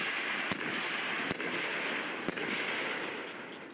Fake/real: real